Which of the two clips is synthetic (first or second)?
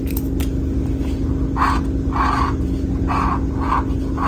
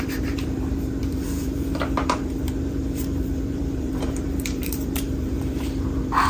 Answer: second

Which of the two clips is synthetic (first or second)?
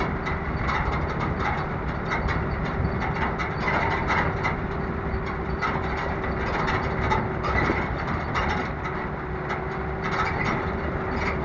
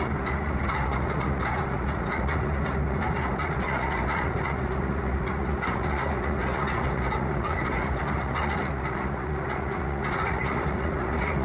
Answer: second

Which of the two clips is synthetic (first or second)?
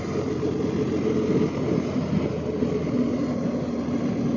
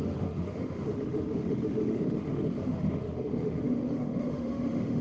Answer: second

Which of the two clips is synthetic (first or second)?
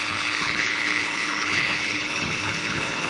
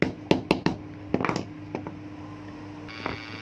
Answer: first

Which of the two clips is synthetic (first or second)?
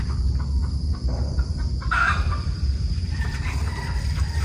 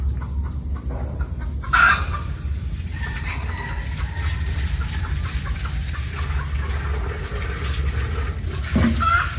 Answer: first